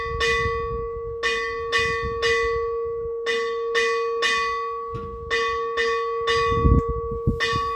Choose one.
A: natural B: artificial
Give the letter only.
A